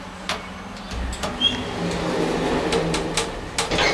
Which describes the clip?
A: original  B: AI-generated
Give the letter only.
A